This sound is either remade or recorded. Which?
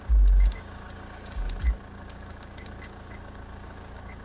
remade